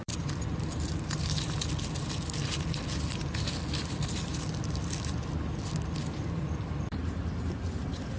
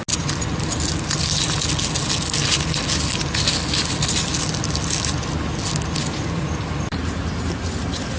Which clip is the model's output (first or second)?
first